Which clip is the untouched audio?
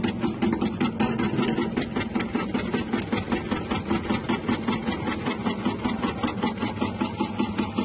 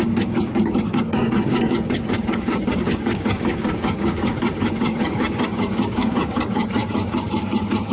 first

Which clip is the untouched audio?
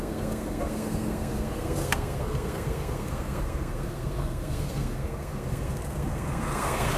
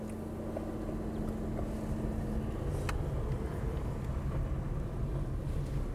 second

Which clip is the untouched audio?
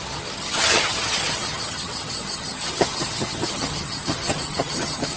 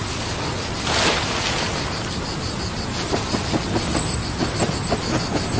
second